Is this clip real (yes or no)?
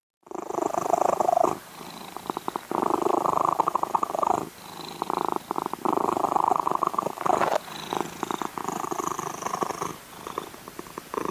yes